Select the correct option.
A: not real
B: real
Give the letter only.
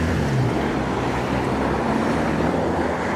A